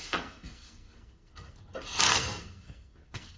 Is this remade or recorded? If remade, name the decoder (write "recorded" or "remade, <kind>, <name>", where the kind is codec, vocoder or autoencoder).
remade, codec, SNAC